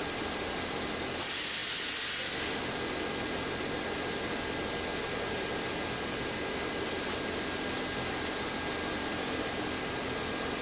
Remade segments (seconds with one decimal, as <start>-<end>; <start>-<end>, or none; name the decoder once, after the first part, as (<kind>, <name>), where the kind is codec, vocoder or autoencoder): none